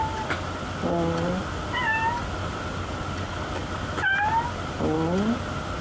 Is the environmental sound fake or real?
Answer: real